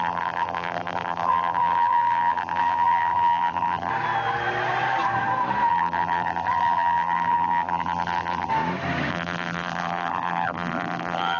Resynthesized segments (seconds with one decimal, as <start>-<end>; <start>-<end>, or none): 0.0-3.9; 5.7-8.5; 9.1-11.4